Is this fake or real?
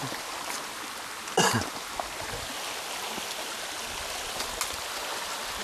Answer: real